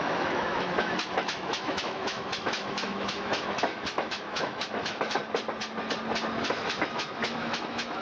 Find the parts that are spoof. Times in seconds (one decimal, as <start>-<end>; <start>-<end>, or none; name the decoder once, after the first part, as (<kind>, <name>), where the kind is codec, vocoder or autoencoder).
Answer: 0.0-5.2 (autoencoder, DAC-VAE); 6.4-8.0